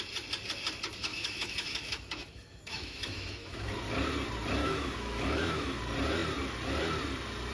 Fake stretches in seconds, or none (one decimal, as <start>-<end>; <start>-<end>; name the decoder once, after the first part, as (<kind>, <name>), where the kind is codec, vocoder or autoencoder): 1.1-3.7 (autoencoder, DAC-VAE); 4.6-5.8